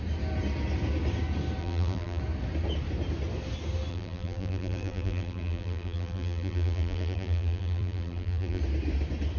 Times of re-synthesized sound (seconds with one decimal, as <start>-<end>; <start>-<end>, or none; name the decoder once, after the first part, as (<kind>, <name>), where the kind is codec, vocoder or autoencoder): 1.6-2.2 (vocoder, BigVGAN v2); 3.9-8.6